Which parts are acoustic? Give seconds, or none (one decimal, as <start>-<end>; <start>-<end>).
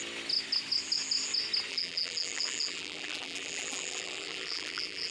0.0-1.7